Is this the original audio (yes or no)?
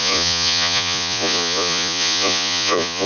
no